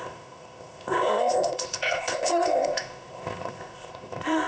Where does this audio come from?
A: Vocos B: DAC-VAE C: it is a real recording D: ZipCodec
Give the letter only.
D